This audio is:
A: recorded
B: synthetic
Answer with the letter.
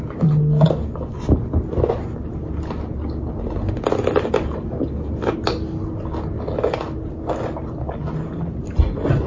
A